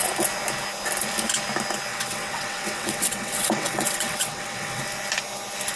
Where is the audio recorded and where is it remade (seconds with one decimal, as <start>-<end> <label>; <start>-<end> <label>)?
0.0-1.9 recorded; 1.9-4.8 remade; 4.8-5.8 recorded